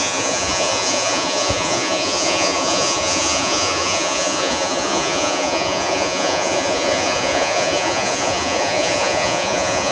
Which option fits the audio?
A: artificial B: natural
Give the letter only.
A